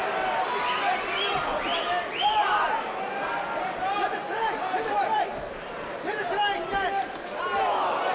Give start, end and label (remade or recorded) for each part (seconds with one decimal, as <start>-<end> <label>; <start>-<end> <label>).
0.0-8.1 recorded